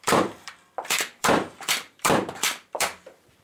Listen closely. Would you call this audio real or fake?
fake